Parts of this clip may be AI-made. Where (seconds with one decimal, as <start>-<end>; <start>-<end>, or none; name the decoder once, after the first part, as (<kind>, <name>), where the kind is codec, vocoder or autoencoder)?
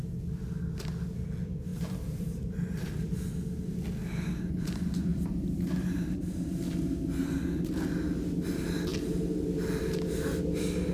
1.7-3.2 (vocoder, BigVGAN v2); 5.1-6.6